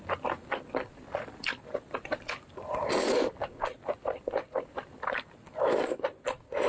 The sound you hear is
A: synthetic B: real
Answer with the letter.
B